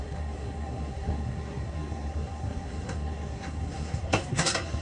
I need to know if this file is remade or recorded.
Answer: remade